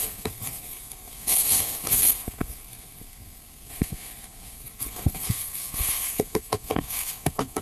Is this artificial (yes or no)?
yes